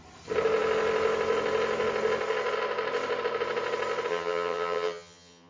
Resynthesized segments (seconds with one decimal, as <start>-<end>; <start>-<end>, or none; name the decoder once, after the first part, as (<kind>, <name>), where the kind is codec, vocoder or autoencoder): 4.1-5.5 (vocoder, HiFi-GAN)